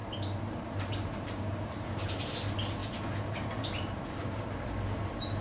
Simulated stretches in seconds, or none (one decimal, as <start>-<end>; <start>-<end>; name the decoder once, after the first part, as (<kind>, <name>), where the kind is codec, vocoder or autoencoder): 0.0-2.1 (vocoder, BigVGAN v2); 2.8-4.4